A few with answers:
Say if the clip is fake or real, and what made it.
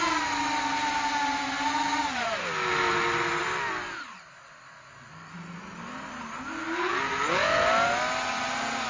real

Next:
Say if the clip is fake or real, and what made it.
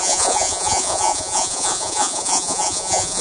fake, vocoder, Vocos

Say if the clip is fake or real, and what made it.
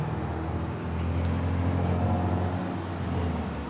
real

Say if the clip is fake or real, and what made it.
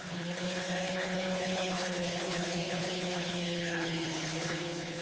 fake, codec, HILCodec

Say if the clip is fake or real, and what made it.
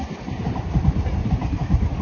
fake, vocoder, BigVGAN v2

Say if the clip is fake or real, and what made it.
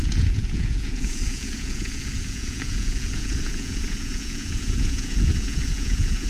fake, vocoder, Vocos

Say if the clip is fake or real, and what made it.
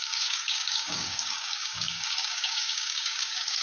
fake, codec, DAC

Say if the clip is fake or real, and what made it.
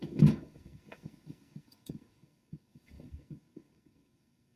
fake, codec, SNAC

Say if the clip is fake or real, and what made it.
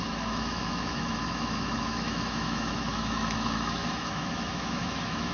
fake, autoencoder, DAC-VAE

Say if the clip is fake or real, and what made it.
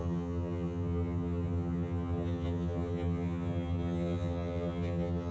fake, vocoder, HiFi-GAN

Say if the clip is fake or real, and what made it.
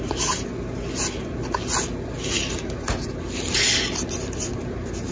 real